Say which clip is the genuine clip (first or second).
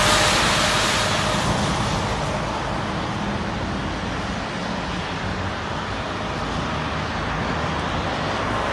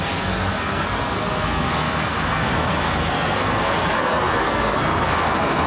first